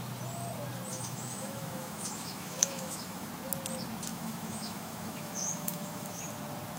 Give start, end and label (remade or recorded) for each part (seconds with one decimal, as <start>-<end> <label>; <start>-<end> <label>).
0.0-0.9 recorded; 0.9-3.3 remade; 3.3-4.1 recorded; 4.1-6.2 remade; 6.2-6.8 recorded